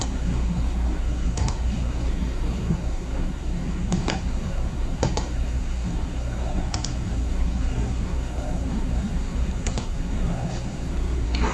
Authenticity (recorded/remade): remade